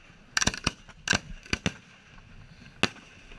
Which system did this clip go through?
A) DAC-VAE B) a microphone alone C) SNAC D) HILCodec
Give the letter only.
B